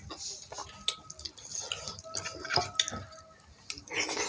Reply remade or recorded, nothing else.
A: recorded